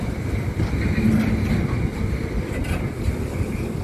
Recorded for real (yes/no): yes